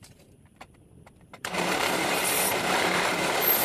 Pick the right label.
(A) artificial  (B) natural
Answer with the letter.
A